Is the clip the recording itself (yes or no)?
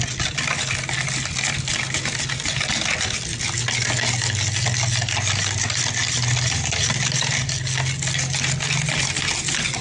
yes